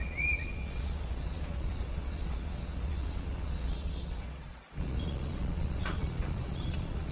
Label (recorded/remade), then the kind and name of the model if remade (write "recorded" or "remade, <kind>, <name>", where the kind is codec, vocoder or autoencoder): remade, vocoder, Vocos